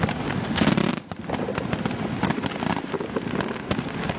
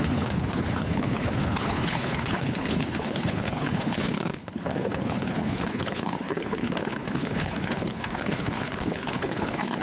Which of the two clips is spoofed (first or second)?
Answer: second